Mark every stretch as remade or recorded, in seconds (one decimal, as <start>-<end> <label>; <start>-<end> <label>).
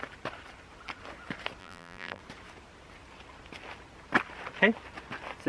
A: 0.0-1.6 recorded; 1.6-2.2 remade; 2.2-5.5 recorded